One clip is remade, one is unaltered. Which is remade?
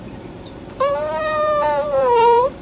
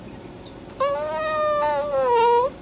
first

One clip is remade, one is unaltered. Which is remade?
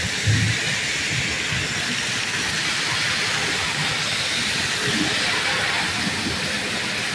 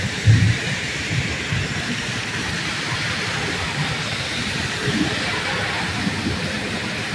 second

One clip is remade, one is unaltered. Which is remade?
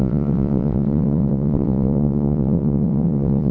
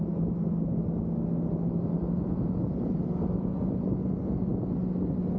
first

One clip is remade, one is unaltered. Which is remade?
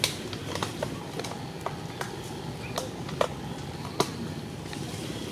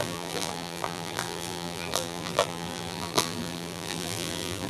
second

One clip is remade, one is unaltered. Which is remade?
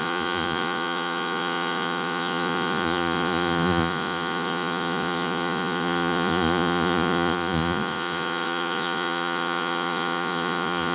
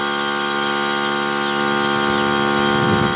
first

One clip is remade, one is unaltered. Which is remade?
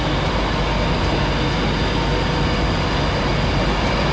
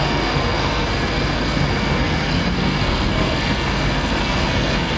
second